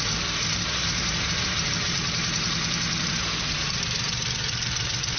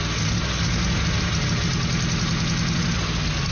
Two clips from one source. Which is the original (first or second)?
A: second